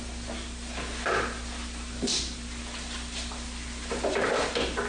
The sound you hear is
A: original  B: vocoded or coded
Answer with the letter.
A